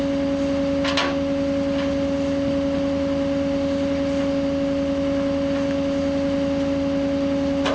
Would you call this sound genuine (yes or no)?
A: yes